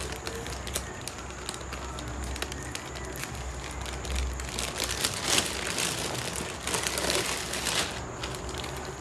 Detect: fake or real real